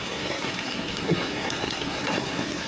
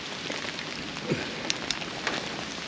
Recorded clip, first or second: second